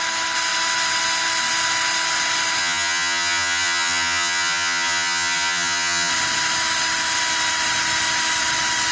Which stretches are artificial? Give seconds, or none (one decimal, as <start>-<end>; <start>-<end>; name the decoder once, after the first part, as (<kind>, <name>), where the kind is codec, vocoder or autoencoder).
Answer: 2.6-6.1 (vocoder, HiFi-GAN)